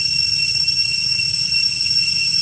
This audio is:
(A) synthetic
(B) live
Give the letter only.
B